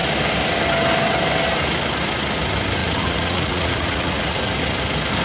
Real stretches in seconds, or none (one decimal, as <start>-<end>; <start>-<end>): 0.0-2.8; 4.4-5.2